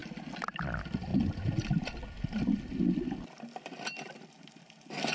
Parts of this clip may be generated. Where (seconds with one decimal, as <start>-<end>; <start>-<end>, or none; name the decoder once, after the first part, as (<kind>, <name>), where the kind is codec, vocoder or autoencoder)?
none